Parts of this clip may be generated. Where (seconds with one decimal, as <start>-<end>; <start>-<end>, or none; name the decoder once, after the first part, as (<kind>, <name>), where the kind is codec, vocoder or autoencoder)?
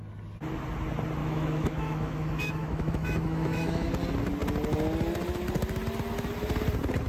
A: 1.2-3.9 (autoencoder, DAC-VAE)